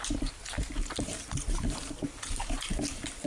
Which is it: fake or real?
fake